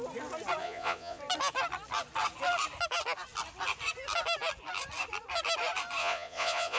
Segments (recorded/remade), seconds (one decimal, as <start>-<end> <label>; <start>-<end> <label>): 0.0-0.6 recorded; 0.6-1.2 remade; 1.2-6.0 recorded; 6.0-6.8 remade